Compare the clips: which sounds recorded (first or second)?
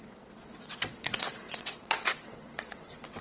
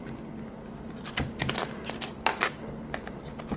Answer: second